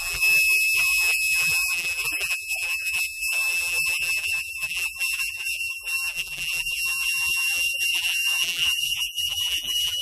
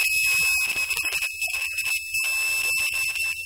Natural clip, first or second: second